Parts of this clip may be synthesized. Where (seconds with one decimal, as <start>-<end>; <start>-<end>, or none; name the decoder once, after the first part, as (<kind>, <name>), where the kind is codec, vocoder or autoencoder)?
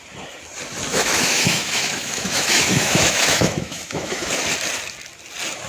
0.9-4.3 (autoencoder, DAC-VAE)